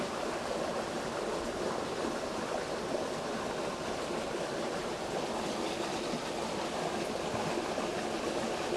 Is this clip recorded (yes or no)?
yes